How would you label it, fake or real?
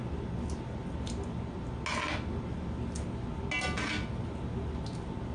real